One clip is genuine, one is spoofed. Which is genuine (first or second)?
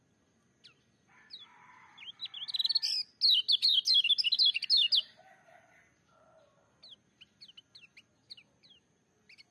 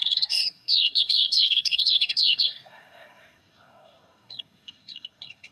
first